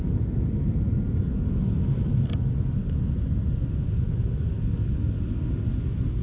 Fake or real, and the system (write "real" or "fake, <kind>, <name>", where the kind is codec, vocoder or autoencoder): real